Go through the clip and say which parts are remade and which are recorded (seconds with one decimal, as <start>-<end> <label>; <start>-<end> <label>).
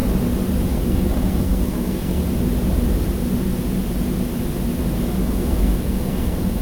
0.0-0.7 recorded; 0.7-2.2 remade; 2.2-5.2 recorded; 5.2-6.6 remade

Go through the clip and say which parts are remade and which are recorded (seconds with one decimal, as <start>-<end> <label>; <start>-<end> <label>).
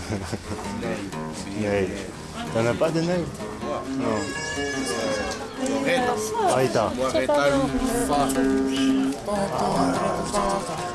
0.0-10.9 recorded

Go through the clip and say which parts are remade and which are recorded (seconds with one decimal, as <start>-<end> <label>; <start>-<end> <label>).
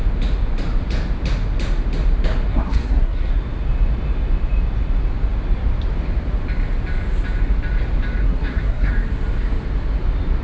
0.0-2.5 recorded; 2.5-3.3 remade; 3.3-8.2 recorded; 8.2-8.9 remade; 8.9-10.4 recorded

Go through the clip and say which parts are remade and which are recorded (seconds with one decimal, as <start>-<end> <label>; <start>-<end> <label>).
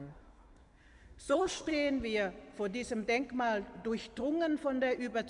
0.0-1.7 remade; 1.7-5.3 recorded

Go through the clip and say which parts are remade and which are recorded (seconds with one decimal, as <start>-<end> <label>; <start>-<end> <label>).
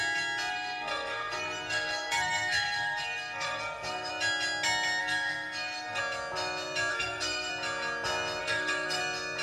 0.0-0.5 recorded; 0.5-4.1 remade; 4.1-5.0 recorded; 5.0-6.0 remade; 6.0-6.9 recorded; 6.9-7.5 remade; 7.5-8.4 recorded; 8.4-9.0 remade; 9.0-9.4 recorded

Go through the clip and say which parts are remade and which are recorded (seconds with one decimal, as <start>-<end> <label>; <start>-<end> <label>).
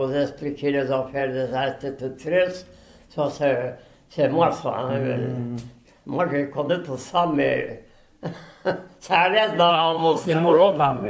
0.0-9.7 recorded; 9.7-11.1 remade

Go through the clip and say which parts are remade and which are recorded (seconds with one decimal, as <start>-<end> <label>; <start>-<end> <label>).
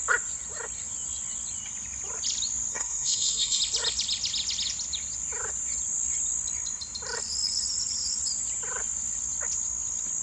0.0-2.7 recorded; 2.7-3.6 remade; 3.6-10.2 recorded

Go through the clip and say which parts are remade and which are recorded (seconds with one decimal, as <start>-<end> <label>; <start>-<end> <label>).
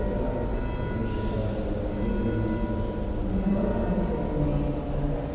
0.0-5.3 recorded